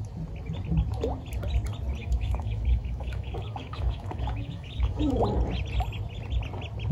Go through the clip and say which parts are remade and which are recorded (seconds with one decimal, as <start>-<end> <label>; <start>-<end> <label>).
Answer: 0.0-2.0 recorded; 2.0-5.2 remade; 5.2-6.9 recorded